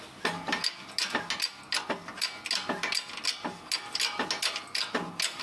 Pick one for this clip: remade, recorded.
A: recorded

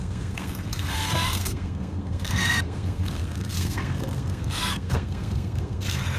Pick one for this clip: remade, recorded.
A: remade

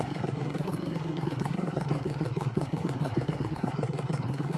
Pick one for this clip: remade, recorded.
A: remade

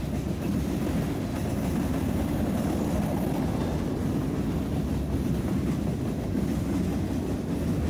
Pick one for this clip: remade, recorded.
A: recorded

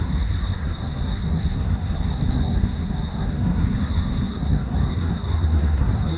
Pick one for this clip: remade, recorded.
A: remade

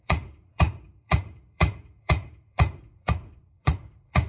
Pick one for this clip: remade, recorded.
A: remade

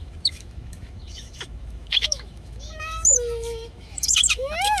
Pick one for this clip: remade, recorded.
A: remade